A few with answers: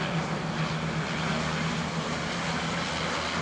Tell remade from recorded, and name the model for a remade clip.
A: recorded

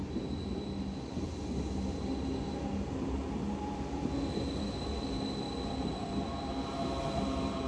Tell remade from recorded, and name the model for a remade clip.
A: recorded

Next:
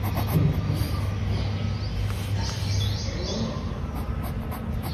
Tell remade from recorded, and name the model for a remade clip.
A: recorded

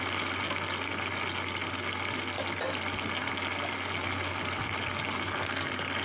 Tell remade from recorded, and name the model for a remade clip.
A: recorded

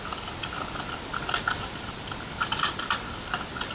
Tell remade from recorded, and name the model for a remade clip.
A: recorded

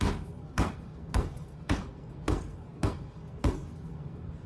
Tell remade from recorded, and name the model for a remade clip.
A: remade, codec, SNAC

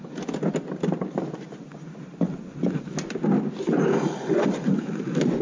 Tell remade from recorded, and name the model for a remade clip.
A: recorded